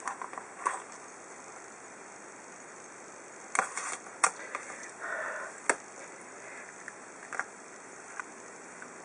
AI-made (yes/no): no